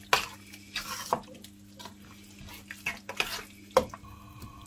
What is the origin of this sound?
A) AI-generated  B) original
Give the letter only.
B